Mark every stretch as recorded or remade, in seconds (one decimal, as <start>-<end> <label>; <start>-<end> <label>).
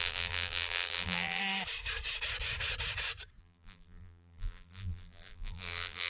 0.0-1.4 remade; 1.4-3.4 recorded; 3.4-6.1 remade